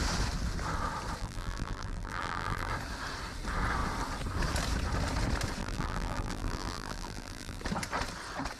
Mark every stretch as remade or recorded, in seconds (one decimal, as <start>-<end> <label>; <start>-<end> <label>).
0.0-1.2 recorded; 1.2-2.7 remade; 2.7-5.6 recorded; 5.6-7.6 remade; 7.6-8.6 recorded